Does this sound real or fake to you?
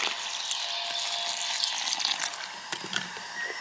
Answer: real